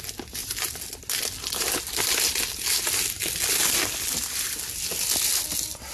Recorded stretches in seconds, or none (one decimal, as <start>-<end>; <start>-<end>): 0.0-5.9